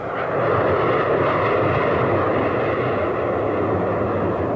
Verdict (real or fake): real